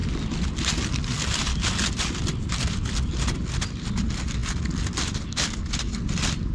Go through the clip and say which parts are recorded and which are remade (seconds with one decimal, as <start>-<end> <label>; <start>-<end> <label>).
0.0-6.5 recorded